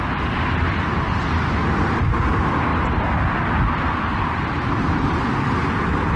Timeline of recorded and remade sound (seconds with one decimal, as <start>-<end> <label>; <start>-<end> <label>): 0.0-6.2 recorded